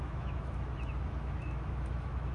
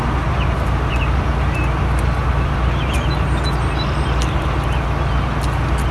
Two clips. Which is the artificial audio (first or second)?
first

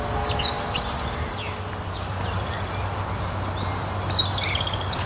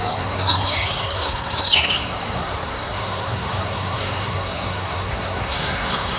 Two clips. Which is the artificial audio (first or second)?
second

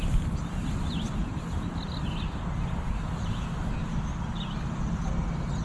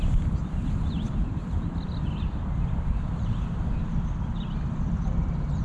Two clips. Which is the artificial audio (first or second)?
second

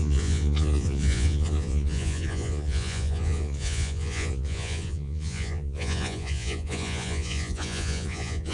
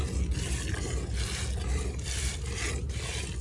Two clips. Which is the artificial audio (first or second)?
first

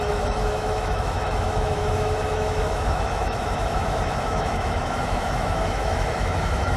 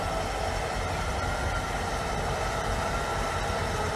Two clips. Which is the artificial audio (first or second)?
first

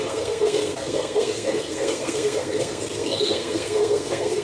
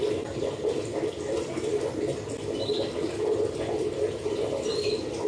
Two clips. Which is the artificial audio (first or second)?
first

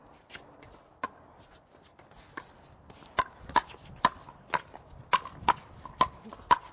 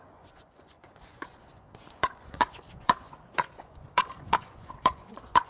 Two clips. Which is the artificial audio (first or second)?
second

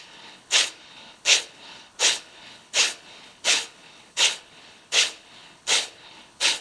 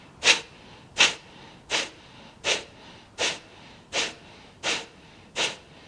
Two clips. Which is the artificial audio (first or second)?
first